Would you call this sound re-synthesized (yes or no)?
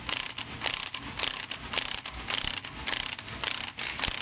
no